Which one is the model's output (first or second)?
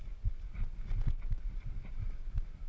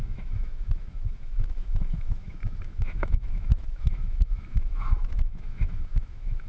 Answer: second